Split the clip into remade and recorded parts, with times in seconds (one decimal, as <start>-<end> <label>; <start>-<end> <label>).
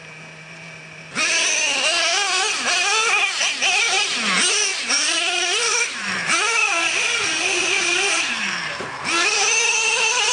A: 0.0-4.7 recorded; 4.7-9.0 remade; 9.0-10.3 recorded